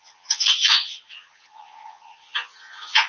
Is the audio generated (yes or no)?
yes